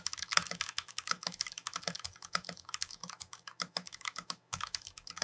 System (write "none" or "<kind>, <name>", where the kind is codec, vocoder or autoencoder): autoencoder, DAC-VAE